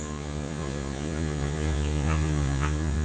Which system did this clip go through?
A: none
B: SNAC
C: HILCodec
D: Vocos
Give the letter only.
D